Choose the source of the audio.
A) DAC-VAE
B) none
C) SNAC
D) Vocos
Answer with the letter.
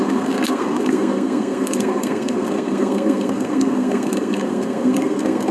C